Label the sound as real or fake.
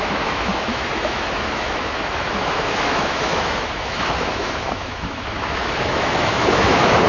fake